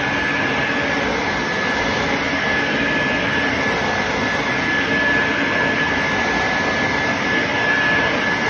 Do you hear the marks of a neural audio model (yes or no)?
no